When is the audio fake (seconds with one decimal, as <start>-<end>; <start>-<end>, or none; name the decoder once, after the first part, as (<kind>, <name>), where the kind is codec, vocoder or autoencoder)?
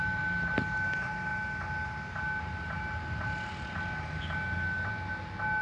none